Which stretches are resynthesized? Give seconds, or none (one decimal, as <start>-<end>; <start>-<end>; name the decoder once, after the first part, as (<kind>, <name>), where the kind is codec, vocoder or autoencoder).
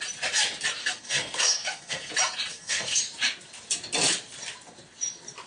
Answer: 0.8-2.1 (codec, SNAC); 2.5-3.0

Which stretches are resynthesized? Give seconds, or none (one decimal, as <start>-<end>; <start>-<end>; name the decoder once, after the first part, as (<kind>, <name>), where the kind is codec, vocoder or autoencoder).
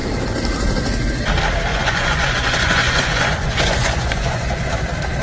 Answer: 1.7-4.7 (vocoder, Vocos)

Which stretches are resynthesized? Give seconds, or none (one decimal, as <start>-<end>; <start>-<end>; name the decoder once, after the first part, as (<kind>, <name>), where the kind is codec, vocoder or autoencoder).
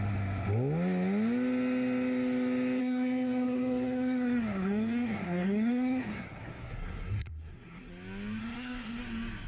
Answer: 2.8-7.9 (codec, SNAC); 8.4-9.0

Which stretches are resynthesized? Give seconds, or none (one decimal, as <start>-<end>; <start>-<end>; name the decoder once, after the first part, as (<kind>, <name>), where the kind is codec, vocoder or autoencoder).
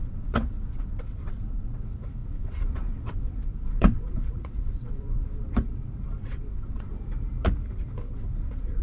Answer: 0.0-6.9 (vocoder, WaveNeXt); 7.7-8.8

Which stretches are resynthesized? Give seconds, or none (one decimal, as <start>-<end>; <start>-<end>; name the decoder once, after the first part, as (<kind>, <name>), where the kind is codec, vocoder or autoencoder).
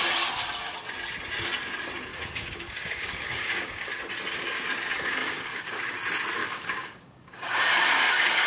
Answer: 2.1-3.9 (codec, DAC); 5.2-5.9; 6.4-8.5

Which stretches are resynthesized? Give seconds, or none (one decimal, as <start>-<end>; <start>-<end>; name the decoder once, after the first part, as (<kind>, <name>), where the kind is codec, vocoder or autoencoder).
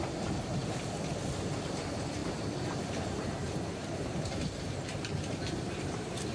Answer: 0.0-0.6 (vocoder, BigVGAN v2); 1.6-6.3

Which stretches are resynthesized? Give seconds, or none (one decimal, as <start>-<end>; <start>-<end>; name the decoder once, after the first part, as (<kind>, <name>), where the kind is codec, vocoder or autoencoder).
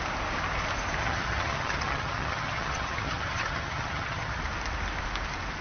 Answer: 1.0-4.4 (vocoder, HiFi-GAN)